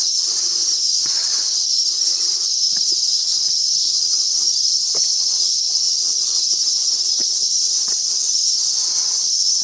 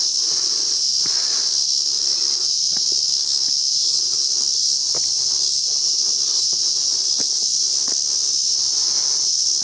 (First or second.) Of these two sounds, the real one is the second